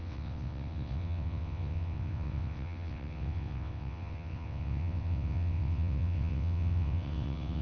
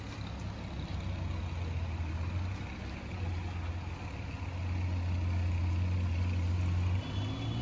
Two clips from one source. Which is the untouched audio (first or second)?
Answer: second